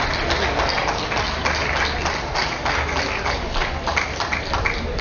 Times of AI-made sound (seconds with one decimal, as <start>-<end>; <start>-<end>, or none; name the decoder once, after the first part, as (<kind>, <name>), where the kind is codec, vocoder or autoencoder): none